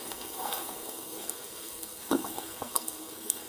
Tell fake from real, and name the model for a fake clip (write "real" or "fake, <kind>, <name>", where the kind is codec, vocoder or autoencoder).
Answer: fake, codec, SNAC